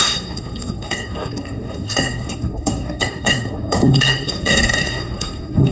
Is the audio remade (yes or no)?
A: yes